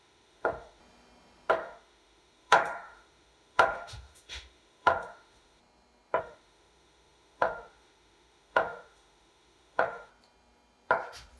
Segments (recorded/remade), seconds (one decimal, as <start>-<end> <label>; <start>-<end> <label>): 0.0-0.8 remade; 0.8-1.5 recorded; 1.5-5.6 remade; 5.6-6.2 recorded; 6.2-10.1 remade; 10.1-11.4 recorded